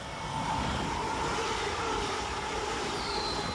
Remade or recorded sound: recorded